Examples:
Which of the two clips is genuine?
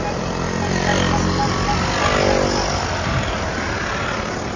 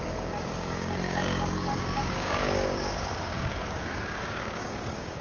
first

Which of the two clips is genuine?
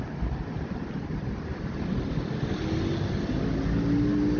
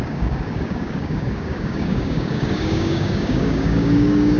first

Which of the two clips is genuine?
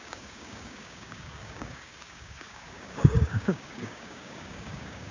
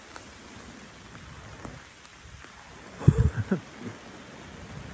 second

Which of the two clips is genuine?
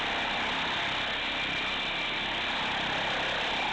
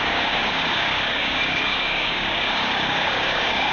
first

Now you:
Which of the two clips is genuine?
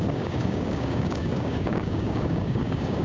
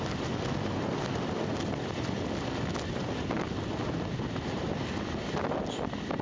second